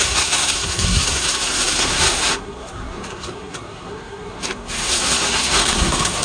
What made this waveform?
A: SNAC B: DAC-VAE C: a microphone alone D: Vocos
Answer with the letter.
A